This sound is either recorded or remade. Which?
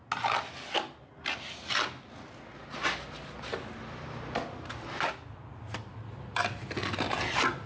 recorded